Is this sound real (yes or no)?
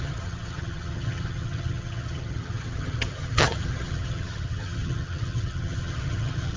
no